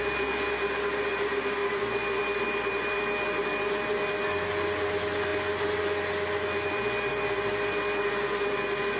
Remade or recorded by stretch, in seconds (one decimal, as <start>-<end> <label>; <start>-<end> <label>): 0.0-9.0 recorded